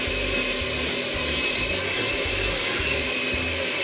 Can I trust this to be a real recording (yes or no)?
yes